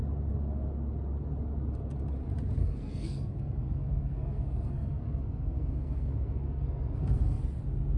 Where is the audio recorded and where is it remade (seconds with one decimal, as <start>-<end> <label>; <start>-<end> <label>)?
0.0-2.6 recorded; 2.6-7.4 remade; 7.4-8.0 recorded